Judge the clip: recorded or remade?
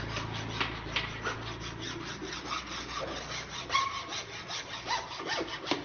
recorded